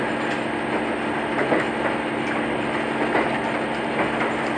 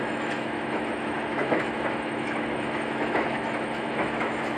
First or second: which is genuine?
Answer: first